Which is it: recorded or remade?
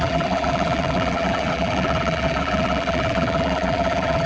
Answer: remade